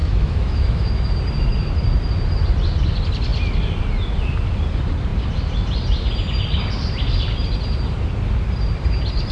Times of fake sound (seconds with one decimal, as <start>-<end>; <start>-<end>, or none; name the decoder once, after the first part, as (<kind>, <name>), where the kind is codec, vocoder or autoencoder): 0.0-1.1 (autoencoder, DAC-VAE)